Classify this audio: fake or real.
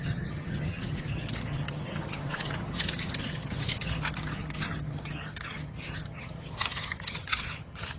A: fake